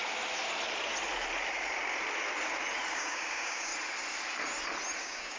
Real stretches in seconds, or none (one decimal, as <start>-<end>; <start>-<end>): 0.0-2.9; 3.7-5.0